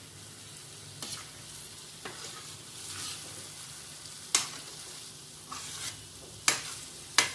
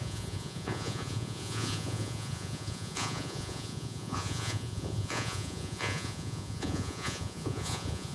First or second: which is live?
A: first